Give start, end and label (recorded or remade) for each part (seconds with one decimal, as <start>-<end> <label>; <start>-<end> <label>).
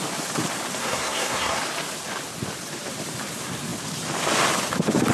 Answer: 0.0-0.8 recorded; 0.8-1.6 remade; 1.6-5.1 recorded